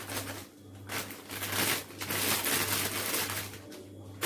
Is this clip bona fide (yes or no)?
yes